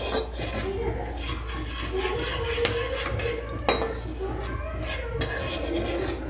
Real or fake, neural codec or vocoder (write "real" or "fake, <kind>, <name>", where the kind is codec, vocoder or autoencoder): real